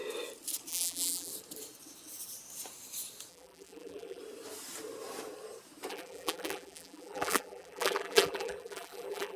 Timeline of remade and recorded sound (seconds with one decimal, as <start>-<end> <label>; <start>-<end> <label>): 0.0-0.7 recorded; 0.7-1.3 remade; 1.3-3.3 recorded; 3.3-4.2 remade; 4.2-5.9 recorded; 5.9-9.4 remade